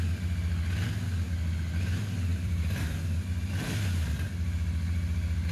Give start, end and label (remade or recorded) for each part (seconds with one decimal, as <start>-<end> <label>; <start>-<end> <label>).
0.0-2.3 recorded; 2.3-3.0 remade; 3.0-5.5 recorded